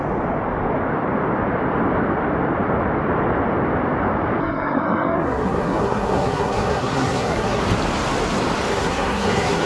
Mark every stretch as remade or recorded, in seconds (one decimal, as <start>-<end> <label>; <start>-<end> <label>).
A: 0.0-4.4 recorded; 4.4-7.6 remade; 7.6-8.7 recorded; 8.7-9.7 remade